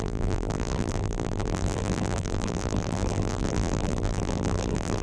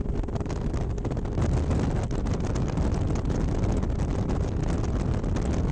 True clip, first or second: second